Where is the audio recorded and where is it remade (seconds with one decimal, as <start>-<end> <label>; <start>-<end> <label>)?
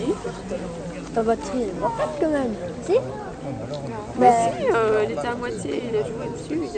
0.0-6.8 recorded